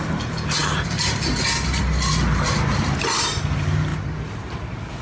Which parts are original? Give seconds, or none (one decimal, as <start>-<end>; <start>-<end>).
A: 0.0-5.0